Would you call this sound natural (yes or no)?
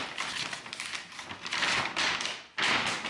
yes